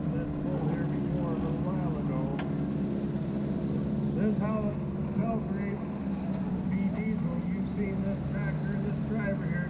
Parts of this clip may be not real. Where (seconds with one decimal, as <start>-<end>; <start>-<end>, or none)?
none